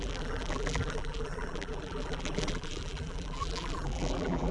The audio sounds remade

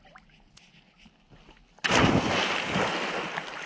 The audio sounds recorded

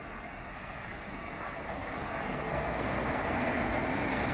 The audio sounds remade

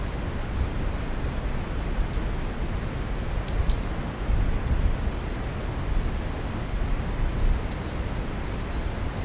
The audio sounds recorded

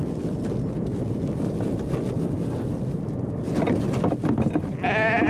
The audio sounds recorded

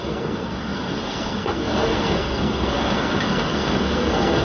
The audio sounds remade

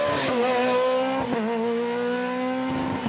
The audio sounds recorded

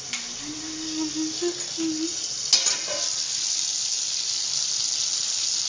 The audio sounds recorded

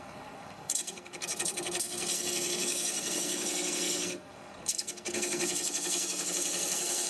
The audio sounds remade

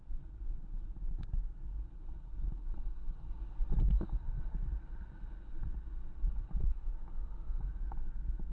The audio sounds recorded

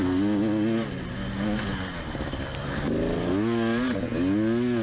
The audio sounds recorded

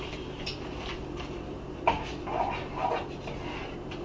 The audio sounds recorded